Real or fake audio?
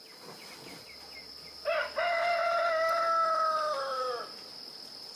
real